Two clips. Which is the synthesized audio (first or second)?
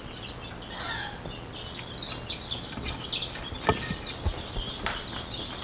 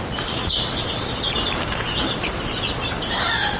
second